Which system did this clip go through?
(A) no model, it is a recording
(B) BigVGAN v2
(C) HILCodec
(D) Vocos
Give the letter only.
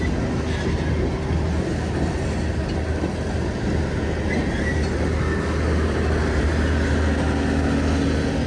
A